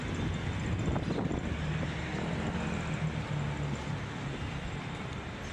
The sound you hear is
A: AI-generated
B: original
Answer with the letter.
B